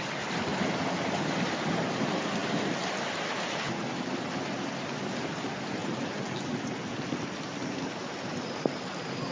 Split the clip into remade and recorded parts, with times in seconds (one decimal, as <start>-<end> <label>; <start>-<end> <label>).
0.0-2.4 remade; 2.4-5.3 recorded; 5.3-5.8 remade; 5.8-6.9 recorded; 6.9-9.3 remade